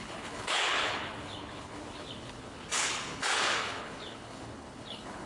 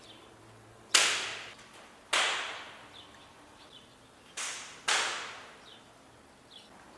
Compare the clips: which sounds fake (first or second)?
first